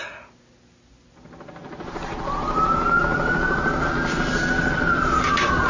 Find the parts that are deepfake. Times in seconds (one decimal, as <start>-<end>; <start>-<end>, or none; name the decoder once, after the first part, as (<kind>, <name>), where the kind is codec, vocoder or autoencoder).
none